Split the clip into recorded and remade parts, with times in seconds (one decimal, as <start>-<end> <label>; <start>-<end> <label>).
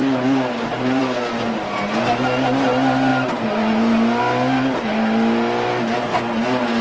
0.0-6.8 recorded